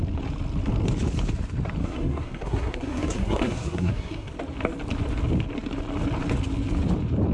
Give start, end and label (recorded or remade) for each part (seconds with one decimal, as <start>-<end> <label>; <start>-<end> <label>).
0.0-1.8 recorded; 1.8-4.3 remade; 4.3-7.3 recorded